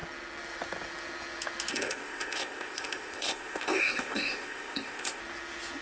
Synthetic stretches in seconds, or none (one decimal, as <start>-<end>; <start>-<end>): 1.7-5.2